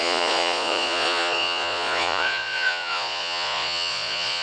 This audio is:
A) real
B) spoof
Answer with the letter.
B